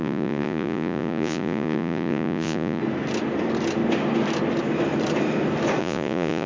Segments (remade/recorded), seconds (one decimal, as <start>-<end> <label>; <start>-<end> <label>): 0.0-2.8 remade; 2.8-5.8 recorded; 5.8-6.5 remade